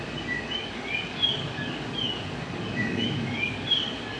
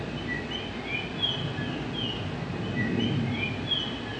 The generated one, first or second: first